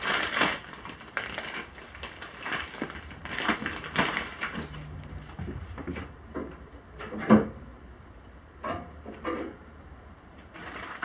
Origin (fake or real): real